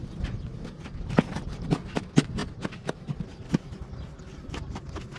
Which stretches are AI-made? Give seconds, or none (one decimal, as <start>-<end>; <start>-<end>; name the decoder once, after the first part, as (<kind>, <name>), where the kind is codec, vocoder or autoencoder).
none